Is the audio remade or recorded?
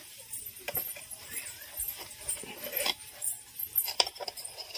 remade